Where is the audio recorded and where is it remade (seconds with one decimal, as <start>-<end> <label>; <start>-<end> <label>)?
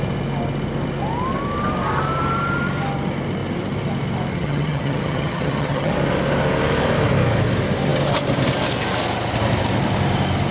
0.0-4.3 recorded; 4.3-5.9 remade; 5.9-10.5 recorded